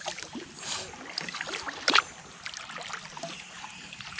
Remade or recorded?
recorded